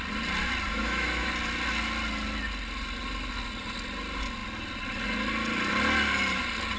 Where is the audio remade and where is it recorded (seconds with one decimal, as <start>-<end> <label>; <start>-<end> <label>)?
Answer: 0.0-0.7 recorded; 0.7-1.3 remade; 1.3-6.8 recorded